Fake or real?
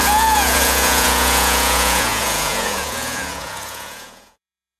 fake